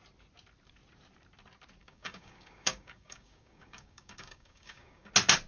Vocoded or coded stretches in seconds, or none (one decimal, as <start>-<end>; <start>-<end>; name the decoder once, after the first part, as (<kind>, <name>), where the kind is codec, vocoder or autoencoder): 1.8-5.1 (codec, DAC)